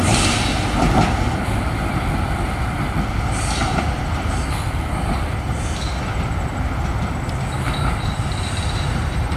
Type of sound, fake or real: real